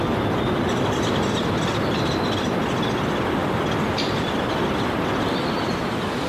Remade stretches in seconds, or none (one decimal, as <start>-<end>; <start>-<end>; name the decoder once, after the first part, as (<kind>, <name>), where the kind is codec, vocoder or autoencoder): none